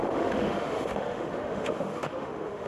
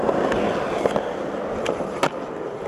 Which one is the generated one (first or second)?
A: first